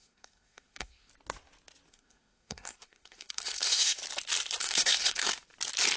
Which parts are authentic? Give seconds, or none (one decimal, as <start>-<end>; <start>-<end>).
1.1-1.9; 4.0-4.6; 5.3-6.0